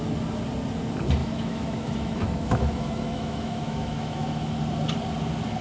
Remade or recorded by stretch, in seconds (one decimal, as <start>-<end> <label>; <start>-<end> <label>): 0.0-1.2 recorded; 1.2-4.6 remade; 4.6-5.6 recorded